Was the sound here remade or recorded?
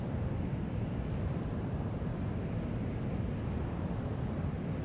recorded